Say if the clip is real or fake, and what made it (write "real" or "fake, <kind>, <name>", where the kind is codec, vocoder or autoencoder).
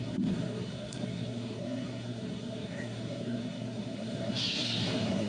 fake, codec, SNAC